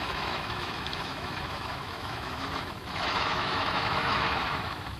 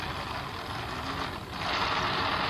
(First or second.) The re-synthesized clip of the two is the first